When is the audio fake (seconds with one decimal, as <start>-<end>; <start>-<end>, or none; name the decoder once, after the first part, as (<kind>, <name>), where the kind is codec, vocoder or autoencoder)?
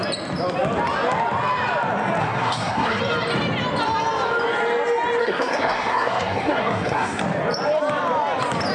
2.2-3.0 (codec, SNAC); 5.2-7.2